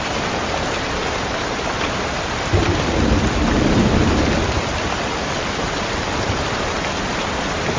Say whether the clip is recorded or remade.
recorded